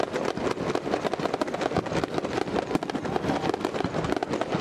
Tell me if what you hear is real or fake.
real